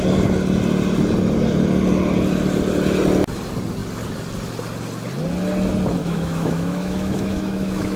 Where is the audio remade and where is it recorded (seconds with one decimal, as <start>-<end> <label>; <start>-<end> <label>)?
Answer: 0.0-6.0 recorded; 6.0-8.0 remade

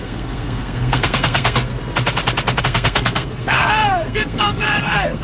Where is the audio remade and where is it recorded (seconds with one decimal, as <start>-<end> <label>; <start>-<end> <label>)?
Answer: 0.0-1.7 remade; 1.7-2.6 recorded; 2.6-5.2 remade

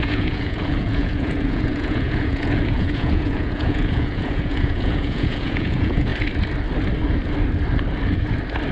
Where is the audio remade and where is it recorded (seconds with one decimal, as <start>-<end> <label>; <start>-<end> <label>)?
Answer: 0.0-6.1 remade; 6.1-8.7 recorded

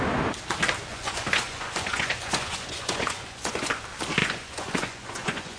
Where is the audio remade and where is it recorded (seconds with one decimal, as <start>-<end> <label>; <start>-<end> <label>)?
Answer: 0.0-0.9 recorded; 0.9-3.7 remade; 3.7-4.2 recorded; 4.2-5.6 remade

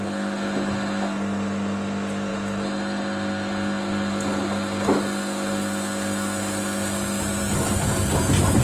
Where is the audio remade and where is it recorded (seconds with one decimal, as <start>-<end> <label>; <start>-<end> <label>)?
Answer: 0.0-8.6 recorded